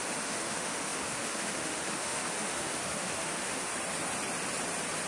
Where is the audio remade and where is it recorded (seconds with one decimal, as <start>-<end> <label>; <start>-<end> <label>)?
0.0-3.7 remade; 3.7-5.1 recorded